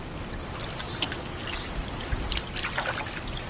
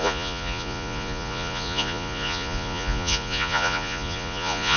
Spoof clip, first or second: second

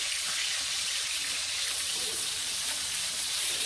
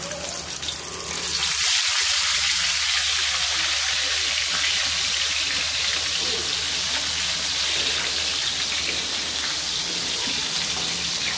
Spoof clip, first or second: first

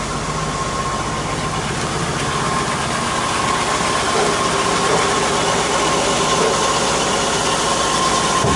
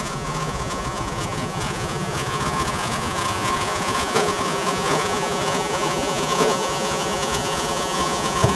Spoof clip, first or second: second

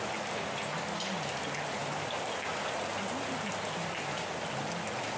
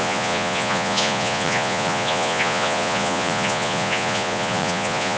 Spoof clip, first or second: second